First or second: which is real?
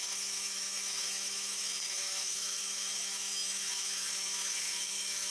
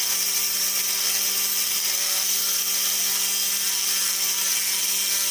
second